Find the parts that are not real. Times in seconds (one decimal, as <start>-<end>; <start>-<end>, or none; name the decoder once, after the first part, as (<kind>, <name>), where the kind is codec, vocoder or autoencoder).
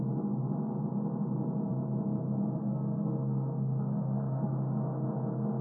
2.6-4.5 (codec, SNAC)